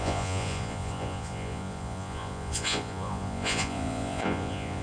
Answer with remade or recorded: remade